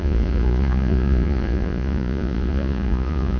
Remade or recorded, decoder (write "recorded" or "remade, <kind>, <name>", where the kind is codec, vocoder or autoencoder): remade, vocoder, Vocos